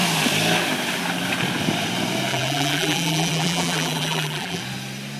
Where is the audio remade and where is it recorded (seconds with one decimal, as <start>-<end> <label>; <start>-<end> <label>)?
0.0-2.3 recorded; 2.3-4.6 remade; 4.6-5.2 recorded

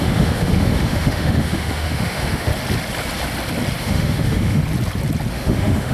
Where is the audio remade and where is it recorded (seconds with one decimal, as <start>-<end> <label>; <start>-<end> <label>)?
0.0-2.5 remade; 2.5-3.8 recorded; 3.8-4.6 remade; 4.6-5.3 recorded; 5.3-5.9 remade

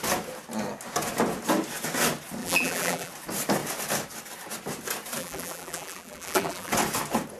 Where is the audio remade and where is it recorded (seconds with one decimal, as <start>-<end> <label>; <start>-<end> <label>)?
0.0-2.4 recorded; 2.4-3.1 remade; 3.1-5.2 recorded; 5.2-6.7 remade; 6.7-7.4 recorded

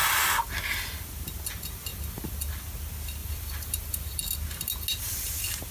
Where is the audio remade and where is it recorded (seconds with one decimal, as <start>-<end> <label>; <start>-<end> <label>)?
0.0-1.9 recorded; 1.9-2.6 remade; 2.6-3.2 recorded; 3.2-4.2 remade; 4.2-5.7 recorded

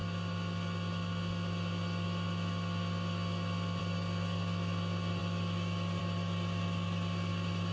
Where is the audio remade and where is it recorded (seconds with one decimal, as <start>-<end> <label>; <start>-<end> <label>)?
0.0-7.7 recorded

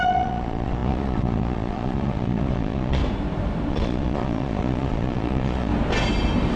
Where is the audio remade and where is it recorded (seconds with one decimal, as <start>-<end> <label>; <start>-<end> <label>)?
0.0-3.0 remade; 3.0-3.7 recorded; 3.7-5.7 remade; 5.7-6.6 recorded

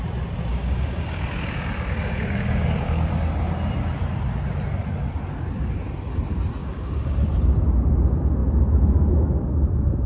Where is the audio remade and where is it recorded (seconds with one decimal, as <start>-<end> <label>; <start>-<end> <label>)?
0.0-0.5 recorded; 0.5-3.1 remade; 3.1-6.6 recorded; 6.6-7.2 remade; 7.2-10.1 recorded